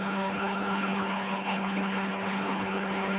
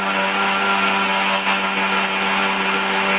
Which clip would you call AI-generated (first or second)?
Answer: first